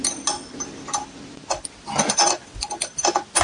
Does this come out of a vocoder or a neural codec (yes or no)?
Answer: no